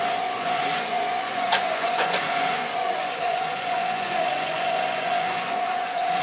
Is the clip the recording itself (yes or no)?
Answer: no